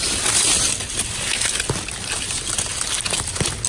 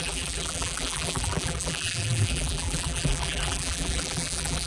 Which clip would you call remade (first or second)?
second